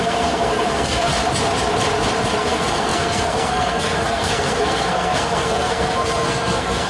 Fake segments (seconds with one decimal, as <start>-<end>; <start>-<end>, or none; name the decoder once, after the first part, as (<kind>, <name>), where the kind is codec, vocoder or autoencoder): 0.0-1.1 (codec, SNAC); 2.4-6.9